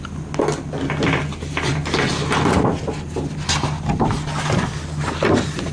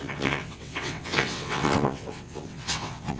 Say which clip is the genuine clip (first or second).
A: first